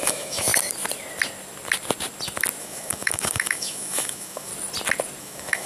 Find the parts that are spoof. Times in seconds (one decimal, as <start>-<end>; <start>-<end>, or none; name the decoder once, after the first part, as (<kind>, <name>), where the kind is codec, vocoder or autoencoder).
0.0-0.5 (autoencoder, DAC-VAE); 2.6-4.5; 5.2-5.7